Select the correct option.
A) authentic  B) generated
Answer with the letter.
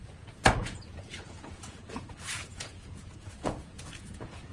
B